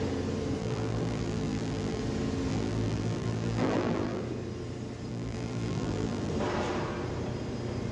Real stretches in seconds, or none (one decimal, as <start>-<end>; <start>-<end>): 0.0-0.6; 2.0-2.5; 4.2-5.1; 6.3-7.9